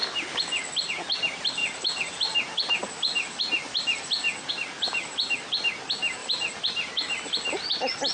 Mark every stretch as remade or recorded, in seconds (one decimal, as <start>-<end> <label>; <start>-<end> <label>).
0.0-6.2 recorded; 6.2-6.9 remade; 6.9-8.1 recorded